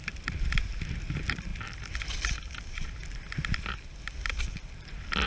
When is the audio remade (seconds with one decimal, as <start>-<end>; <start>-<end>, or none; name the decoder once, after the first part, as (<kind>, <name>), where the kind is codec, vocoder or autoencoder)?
none